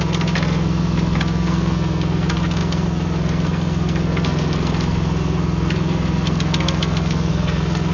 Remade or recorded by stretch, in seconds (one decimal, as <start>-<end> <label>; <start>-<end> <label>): 0.0-7.9 remade